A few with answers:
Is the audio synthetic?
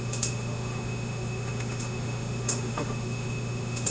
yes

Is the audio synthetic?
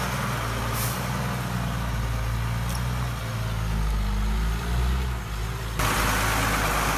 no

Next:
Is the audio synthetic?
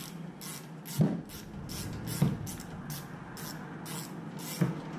no